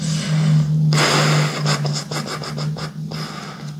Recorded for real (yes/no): yes